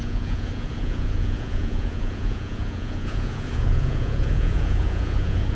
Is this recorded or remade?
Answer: remade